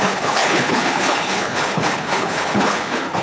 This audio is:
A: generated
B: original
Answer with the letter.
A